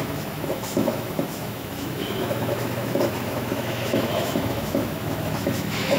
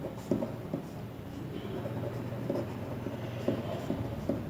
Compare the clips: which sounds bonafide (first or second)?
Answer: second